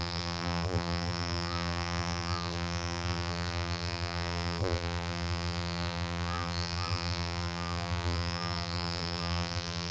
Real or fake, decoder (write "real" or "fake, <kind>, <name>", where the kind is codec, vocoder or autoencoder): fake, vocoder, BigVGAN v2